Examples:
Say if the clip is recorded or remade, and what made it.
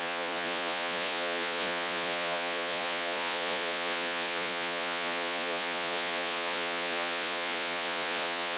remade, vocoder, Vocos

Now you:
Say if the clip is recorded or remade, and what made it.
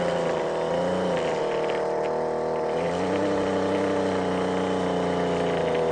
recorded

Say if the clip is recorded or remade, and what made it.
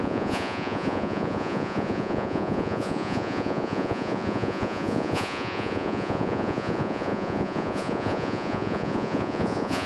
remade, vocoder, Vocos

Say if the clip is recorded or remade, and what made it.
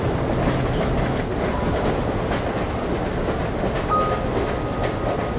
recorded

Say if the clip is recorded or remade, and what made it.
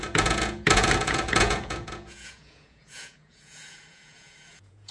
remade, vocoder, Vocos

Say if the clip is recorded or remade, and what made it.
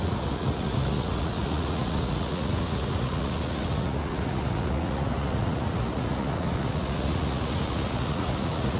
remade, vocoder, Vocos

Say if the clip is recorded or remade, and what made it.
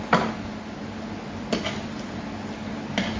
recorded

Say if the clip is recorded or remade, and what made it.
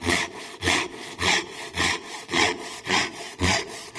remade, vocoder, Vocos